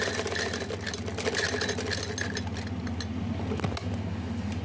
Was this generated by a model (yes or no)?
no